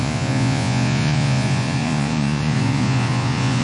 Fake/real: fake